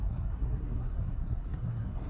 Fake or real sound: fake